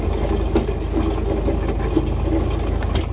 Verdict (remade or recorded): recorded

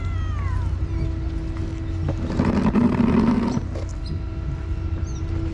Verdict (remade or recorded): recorded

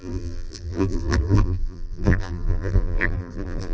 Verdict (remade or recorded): remade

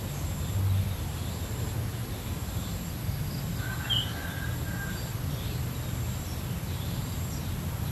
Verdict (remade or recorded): recorded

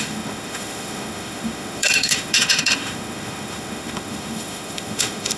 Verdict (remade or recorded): remade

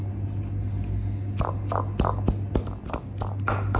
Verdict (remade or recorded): recorded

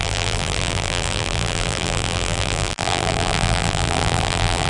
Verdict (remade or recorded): remade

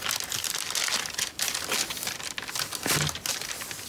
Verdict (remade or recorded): recorded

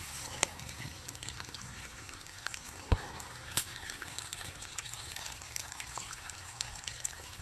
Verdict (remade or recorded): remade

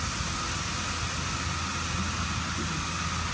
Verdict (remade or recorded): recorded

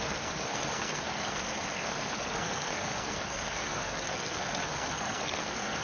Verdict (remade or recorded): remade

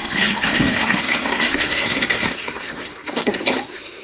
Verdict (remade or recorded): remade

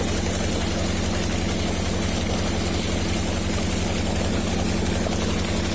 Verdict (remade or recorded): recorded